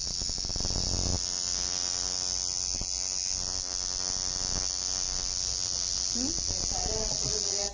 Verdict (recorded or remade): recorded